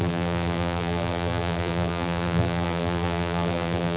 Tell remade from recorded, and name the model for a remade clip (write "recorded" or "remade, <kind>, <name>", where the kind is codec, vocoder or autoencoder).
remade, vocoder, BigVGAN v2